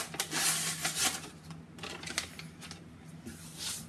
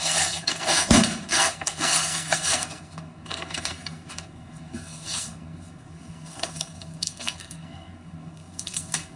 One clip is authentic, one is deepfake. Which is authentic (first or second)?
first